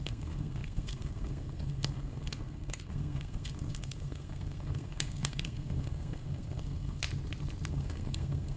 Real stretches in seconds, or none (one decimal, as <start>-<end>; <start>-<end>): 7.0-7.7